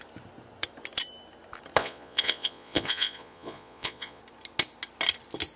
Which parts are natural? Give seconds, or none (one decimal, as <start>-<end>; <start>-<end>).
0.0-1.8; 4.2-5.6